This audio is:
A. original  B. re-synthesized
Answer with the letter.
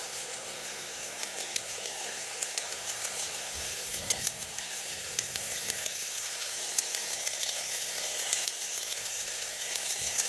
B